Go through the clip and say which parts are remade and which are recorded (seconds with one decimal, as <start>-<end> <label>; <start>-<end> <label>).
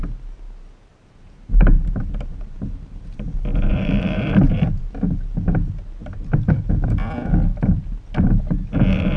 0.0-0.9 recorded; 0.9-4.8 remade; 4.8-6.0 recorded; 6.0-6.7 remade; 6.7-9.2 recorded